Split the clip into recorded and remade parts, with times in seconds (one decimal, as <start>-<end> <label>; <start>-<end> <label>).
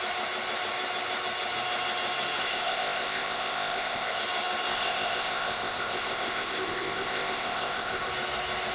0.0-2.4 recorded; 2.4-4.2 remade; 4.2-4.7 recorded; 4.7-8.1 remade; 8.1-8.7 recorded